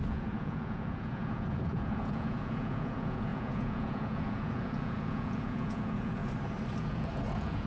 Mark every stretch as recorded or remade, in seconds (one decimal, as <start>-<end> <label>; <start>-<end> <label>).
0.0-6.2 remade; 6.2-6.8 recorded; 6.8-7.7 remade